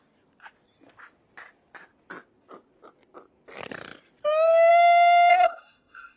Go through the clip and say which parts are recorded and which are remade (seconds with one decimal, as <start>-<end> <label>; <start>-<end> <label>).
0.0-5.3 recorded; 5.3-6.2 remade